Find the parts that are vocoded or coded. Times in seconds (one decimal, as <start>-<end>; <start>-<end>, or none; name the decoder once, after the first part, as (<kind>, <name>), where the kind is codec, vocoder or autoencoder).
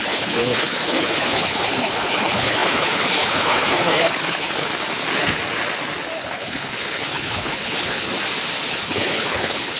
0.0-4.7 (codec, HILCodec); 6.2-8.1; 8.7-9.8